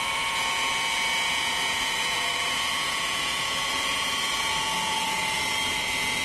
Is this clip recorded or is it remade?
remade